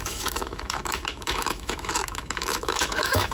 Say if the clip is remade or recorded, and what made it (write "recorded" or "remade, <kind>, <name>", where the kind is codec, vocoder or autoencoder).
remade, autoencoder, DAC-VAE